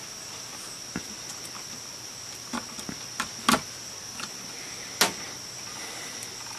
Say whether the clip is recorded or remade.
recorded